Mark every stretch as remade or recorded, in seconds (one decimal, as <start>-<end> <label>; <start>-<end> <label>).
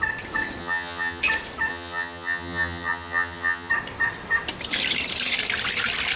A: 0.0-0.6 recorded; 0.6-1.2 remade; 1.2-1.7 recorded; 1.7-3.7 remade; 3.7-6.2 recorded